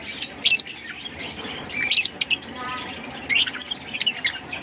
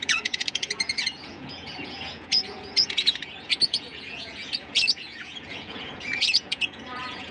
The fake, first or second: second